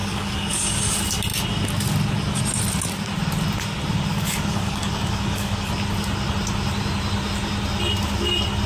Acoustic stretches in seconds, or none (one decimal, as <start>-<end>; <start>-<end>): 0.8-4.1; 5.7-8.7

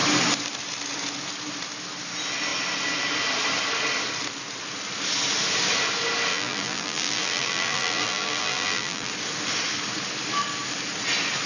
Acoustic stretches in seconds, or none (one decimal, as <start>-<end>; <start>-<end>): 0.0-6.3; 9.1-11.5

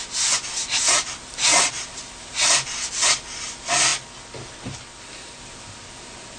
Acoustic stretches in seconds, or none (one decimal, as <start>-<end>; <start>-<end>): 0.0-0.6; 2.9-6.4

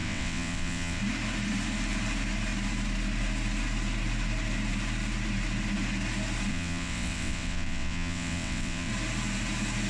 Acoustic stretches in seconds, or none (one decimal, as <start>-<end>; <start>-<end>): 1.0-6.5; 8.9-9.9

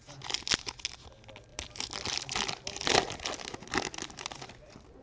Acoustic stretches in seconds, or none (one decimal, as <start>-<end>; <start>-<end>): 0.0-5.0

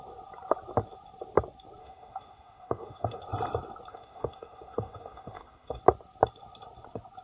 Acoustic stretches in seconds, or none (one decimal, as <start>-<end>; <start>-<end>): 0.0-1.8; 3.2-3.9; 5.8-7.2

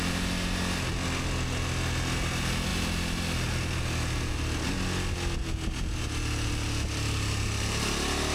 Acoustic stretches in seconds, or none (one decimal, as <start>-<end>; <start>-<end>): 0.0-8.3

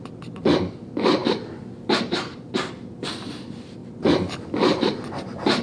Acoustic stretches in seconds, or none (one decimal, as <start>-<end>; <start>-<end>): 0.0-5.6